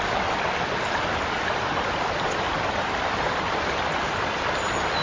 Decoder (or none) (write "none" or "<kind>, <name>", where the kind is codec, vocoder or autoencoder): none